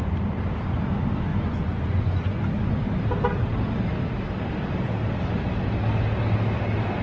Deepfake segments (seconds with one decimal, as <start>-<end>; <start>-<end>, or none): 1.3-2.8